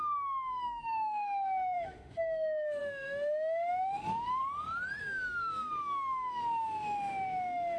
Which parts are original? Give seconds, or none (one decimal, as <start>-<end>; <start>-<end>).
4.4-5.0